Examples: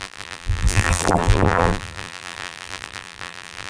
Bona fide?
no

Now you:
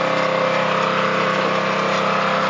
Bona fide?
yes